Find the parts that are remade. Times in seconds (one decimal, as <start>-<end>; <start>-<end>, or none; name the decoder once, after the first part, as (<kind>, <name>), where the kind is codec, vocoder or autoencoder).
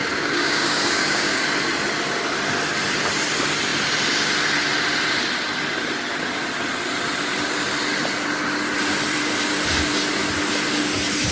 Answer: 0.0-1.4 (codec, DAC)